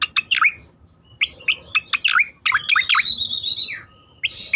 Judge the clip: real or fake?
real